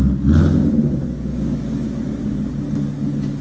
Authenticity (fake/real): real